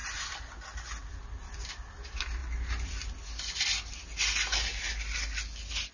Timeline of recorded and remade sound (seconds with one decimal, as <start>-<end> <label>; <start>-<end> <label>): 0.0-5.9 recorded